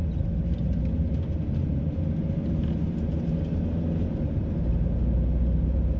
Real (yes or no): yes